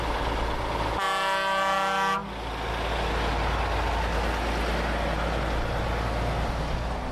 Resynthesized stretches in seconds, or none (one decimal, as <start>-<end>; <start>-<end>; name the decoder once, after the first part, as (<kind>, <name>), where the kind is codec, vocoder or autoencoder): none